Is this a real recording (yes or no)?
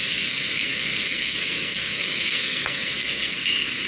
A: no